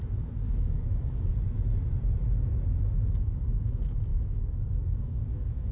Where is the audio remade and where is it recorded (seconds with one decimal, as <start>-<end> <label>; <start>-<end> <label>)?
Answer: 0.0-1.3 remade; 1.3-2.9 recorded; 2.9-5.7 remade